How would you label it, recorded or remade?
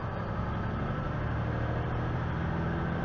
recorded